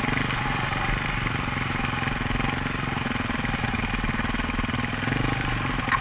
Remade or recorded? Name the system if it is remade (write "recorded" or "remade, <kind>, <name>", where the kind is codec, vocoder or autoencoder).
recorded